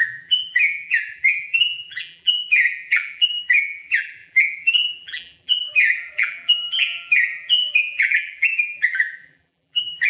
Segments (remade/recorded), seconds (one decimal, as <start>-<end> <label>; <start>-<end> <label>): 0.0-10.1 remade